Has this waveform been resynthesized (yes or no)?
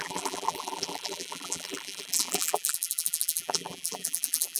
yes